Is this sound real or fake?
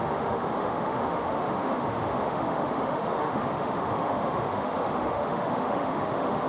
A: fake